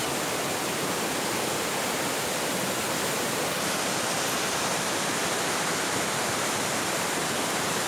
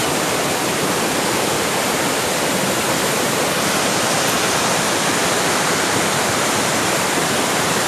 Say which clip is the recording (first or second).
first